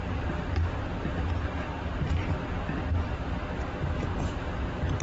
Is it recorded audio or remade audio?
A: recorded